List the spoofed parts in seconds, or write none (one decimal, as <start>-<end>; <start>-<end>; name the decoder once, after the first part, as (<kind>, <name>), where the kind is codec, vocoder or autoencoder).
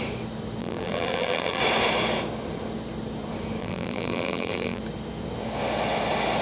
0.6-1.6 (vocoder, BigVGAN v2); 3.6-4.8